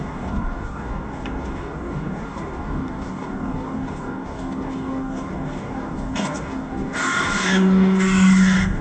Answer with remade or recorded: remade